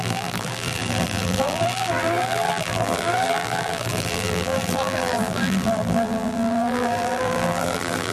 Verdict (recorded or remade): remade